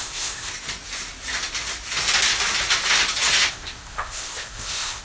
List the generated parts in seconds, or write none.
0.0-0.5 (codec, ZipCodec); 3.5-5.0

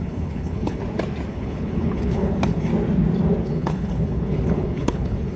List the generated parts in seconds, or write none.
0.0-0.8 (codec, HILCodec); 1.3-2.7; 3.4-5.4

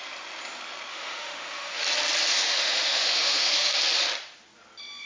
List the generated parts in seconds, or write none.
0.9-1.8 (autoencoder, DAC-VAE); 2.3-3.7

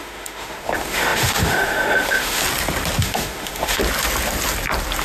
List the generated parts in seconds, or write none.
0.0-2.4 (autoencoder, DAC-VAE); 3.0-3.8